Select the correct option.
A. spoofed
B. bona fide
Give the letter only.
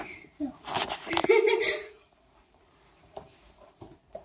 A